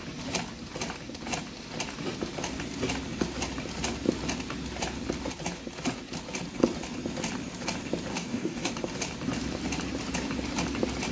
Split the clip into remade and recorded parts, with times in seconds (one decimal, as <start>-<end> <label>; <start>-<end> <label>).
0.0-8.1 recorded; 8.1-8.7 remade; 8.7-11.1 recorded